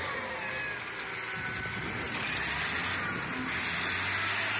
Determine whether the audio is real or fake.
real